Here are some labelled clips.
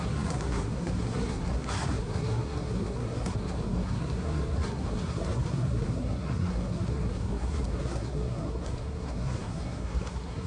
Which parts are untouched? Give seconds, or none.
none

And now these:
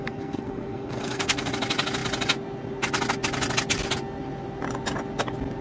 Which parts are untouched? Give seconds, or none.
1.5-5.6

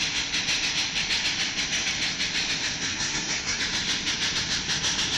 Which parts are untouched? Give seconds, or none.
0.0-2.9; 3.6-5.2

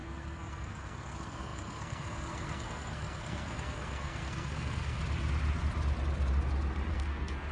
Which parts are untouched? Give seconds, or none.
5.0-6.9